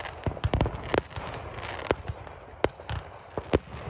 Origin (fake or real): real